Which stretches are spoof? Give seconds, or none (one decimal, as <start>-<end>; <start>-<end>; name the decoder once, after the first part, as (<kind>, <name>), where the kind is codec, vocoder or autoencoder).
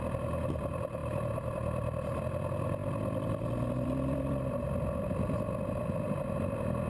1.0-2.2 (vocoder, BigVGAN v2); 2.8-5.5